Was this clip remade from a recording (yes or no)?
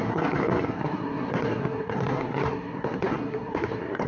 yes